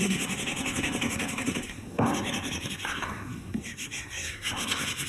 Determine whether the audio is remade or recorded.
remade